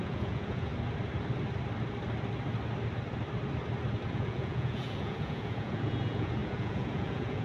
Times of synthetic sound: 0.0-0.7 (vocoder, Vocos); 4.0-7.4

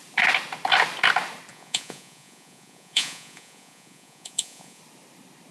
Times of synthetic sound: 1.5-4.8 (vocoder, Vocos)

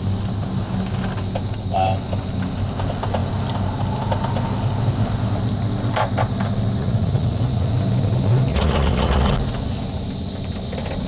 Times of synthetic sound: 6.8-7.7 (vocoder, Vocos); 8.5-9.3

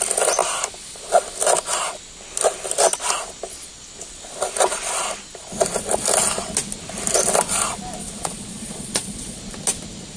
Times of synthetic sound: 8.0-9.4 (vocoder, Vocos)